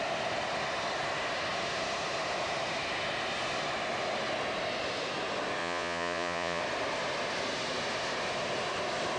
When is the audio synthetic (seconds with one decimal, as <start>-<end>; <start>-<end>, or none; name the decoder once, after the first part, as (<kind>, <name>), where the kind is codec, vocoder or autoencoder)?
5.6-6.6 (vocoder, Vocos)